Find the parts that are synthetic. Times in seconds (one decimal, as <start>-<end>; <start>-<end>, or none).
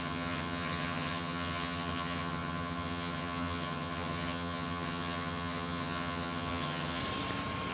0.0-7.0